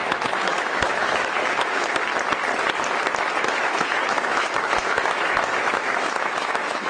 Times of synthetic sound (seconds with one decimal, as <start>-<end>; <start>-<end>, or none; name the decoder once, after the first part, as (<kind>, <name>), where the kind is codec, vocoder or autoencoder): 0.0-2.1 (autoencoder, DAC-VAE); 3.4-6.9